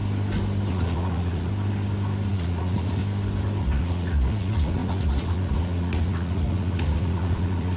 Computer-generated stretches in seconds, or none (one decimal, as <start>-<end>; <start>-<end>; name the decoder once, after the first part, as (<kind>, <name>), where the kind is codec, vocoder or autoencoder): 0.7-1.5 (vocoder, Vocos); 2.3-3.0; 3.6-7.8